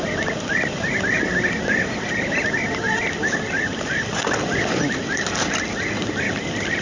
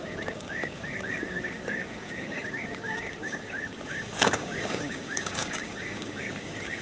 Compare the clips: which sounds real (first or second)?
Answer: first